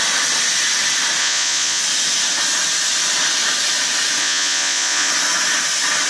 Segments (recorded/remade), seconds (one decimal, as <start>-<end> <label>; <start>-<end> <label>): 0.0-1.2 recorded; 1.2-1.8 remade; 1.8-4.2 recorded; 4.2-5.1 remade; 5.1-6.1 recorded